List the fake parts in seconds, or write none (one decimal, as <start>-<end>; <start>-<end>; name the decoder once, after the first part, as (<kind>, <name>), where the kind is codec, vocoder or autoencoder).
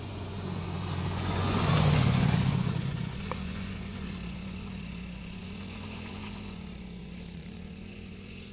0.0-8.5 (vocoder, Vocos)